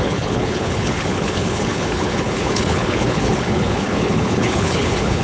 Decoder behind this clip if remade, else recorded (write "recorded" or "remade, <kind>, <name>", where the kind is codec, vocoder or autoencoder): remade, codec, HILCodec